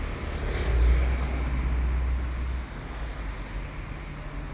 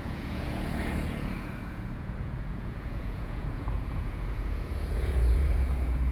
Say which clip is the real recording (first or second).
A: first